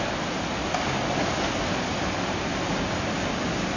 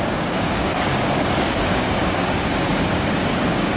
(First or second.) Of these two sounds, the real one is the first